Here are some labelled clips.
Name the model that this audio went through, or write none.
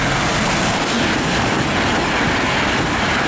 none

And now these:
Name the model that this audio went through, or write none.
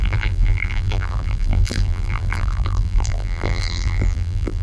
vocoder, BigVGAN v2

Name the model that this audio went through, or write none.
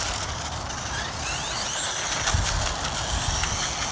none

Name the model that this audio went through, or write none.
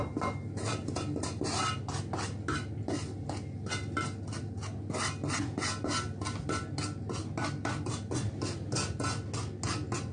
none